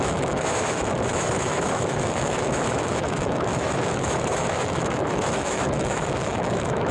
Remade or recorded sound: remade